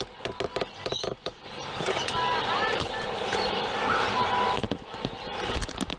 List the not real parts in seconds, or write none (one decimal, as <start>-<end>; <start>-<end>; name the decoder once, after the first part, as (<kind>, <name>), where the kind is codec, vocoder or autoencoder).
none

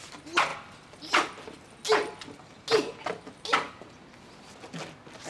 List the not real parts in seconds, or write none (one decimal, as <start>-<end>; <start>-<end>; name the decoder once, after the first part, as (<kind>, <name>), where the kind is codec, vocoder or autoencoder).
none

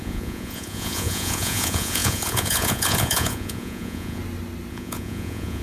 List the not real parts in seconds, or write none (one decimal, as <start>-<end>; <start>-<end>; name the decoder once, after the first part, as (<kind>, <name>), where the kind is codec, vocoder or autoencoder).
0.0-4.2 (vocoder, Vocos); 4.7-5.6

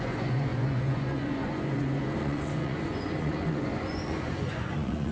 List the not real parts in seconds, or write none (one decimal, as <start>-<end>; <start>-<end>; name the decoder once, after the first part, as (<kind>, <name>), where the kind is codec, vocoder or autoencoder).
0.0-5.1 (vocoder, Vocos)

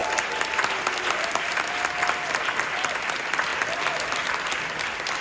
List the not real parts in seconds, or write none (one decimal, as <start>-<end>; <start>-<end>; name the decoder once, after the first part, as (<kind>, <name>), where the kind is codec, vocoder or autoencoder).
none

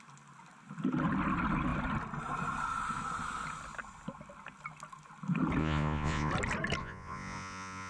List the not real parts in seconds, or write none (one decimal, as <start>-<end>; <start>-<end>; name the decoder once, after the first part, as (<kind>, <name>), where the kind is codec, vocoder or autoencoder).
5.6-6.3 (vocoder, Vocos); 6.8-7.9

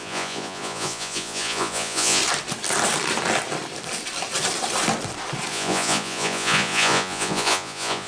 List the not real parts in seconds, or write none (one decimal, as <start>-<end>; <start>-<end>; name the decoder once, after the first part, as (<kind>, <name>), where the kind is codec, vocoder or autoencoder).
0.0-2.2 (vocoder, Vocos); 5.5-8.1